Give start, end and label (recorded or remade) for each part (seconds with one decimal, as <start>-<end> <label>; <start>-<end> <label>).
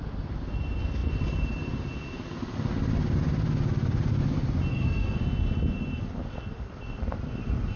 0.0-4.7 recorded; 4.7-5.2 remade; 5.2-7.8 recorded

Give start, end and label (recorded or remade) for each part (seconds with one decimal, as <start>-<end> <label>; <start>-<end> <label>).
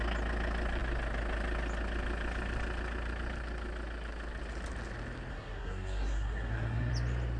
0.0-5.3 recorded; 5.3-6.9 remade; 6.9-7.4 recorded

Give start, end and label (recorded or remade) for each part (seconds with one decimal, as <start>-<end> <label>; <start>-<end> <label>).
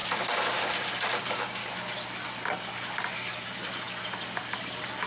0.0-1.2 recorded; 1.2-1.6 remade; 1.6-5.1 recorded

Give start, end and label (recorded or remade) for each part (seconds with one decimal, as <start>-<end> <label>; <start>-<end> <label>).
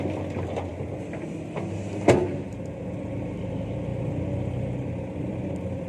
0.0-5.9 recorded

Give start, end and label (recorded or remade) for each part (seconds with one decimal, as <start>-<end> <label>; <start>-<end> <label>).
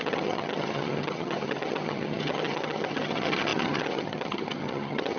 0.0-5.2 remade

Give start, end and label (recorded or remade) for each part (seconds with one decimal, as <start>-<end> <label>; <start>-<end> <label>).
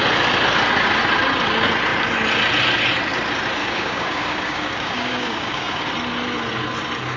0.0-3.6 recorded; 3.6-5.8 remade; 5.8-7.2 recorded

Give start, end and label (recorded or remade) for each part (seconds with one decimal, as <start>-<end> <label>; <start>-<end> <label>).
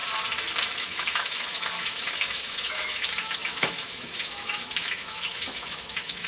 0.0-0.8 recorded; 0.8-6.3 remade